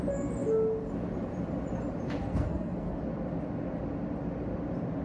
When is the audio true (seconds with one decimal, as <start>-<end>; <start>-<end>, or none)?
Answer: 0.0-2.2; 3.0-5.0